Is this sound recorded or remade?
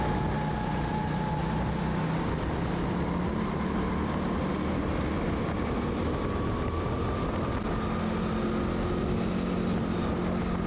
recorded